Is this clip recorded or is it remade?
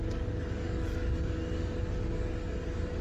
remade